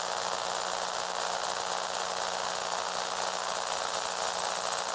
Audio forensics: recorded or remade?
recorded